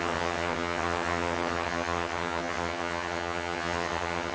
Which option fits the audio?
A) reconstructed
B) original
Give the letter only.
A